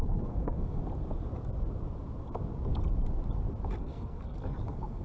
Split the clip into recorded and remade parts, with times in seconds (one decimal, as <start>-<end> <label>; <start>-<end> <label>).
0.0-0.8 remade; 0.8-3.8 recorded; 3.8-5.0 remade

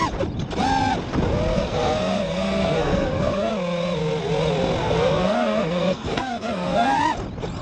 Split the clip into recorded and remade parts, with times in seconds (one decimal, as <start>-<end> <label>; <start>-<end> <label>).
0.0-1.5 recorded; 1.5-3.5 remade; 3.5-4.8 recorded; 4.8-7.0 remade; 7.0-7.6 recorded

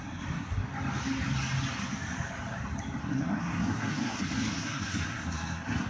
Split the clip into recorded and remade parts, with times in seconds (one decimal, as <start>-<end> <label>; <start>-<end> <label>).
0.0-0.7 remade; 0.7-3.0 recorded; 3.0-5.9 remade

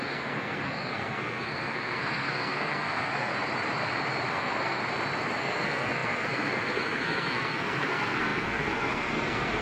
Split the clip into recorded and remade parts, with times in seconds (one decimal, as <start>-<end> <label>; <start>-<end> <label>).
0.0-3.3 remade; 3.3-4.3 recorded; 4.3-4.8 remade; 4.8-5.4 recorded; 5.4-9.6 remade

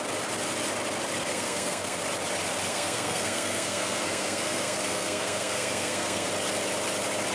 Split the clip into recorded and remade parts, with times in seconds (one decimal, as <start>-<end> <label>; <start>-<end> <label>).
0.0-1.3 recorded; 1.3-2.0 remade; 2.0-2.7 recorded; 2.7-6.3 remade; 6.3-7.3 recorded

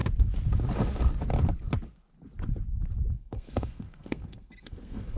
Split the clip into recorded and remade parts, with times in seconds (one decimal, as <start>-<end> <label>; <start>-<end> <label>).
0.0-3.1 recorded; 3.1-5.2 remade

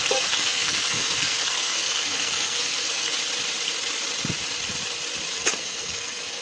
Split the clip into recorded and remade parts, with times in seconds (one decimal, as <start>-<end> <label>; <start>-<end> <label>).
0.0-3.1 remade; 3.1-5.3 recorded; 5.3-6.4 remade